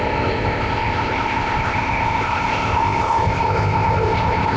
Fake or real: fake